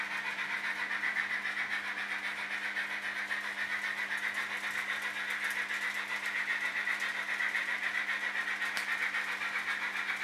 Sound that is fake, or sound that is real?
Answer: real